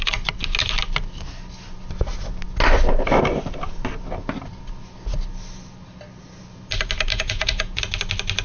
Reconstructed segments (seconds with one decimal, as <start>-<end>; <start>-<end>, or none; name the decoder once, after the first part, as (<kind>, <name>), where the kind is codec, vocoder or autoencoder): 7.1-7.8 (vocoder, Vocos)